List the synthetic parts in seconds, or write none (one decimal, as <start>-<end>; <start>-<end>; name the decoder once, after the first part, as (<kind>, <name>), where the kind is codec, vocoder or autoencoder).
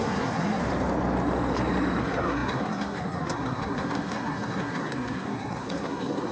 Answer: 0.0-0.6 (codec, SNAC); 2.0-6.3